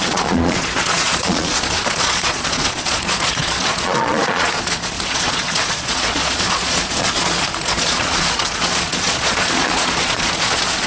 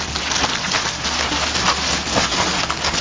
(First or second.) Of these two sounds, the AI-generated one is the first